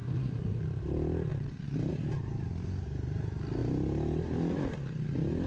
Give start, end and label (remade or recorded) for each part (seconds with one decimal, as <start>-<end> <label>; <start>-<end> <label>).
0.0-0.6 remade; 0.6-5.5 recorded